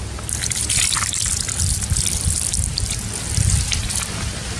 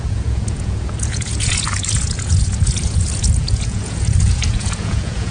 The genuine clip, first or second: first